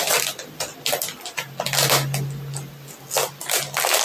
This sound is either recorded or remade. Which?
recorded